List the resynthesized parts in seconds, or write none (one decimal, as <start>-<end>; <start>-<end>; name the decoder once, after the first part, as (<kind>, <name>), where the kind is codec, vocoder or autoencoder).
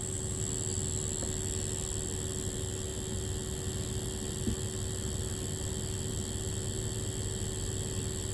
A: none